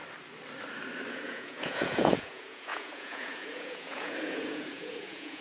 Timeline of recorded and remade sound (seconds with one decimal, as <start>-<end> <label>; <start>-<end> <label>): 0.0-1.1 recorded; 1.1-5.4 remade